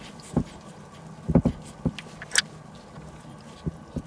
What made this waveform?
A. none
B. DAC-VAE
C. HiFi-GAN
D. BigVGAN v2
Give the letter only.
A